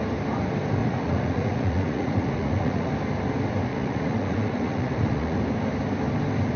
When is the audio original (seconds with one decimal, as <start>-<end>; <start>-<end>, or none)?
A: 0.0-0.8; 2.9-3.7; 5.4-6.6